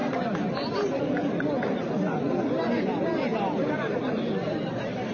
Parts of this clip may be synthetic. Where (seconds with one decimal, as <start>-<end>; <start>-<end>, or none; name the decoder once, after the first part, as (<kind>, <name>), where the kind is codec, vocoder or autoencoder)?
1.0-5.1 (vocoder, BigVGAN v2)